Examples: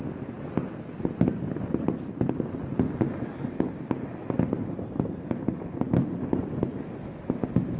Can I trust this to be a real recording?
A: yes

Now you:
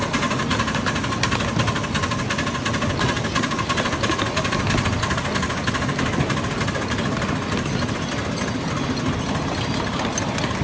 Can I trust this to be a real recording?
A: yes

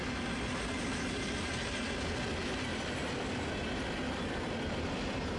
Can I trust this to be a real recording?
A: yes